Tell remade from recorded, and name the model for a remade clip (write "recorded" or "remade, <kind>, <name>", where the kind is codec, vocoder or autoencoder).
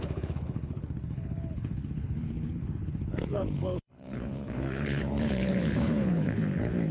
remade, codec, HILCodec